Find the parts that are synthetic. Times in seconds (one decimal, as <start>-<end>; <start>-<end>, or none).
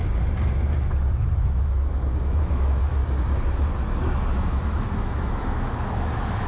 1.4-3.0; 4.3-6.5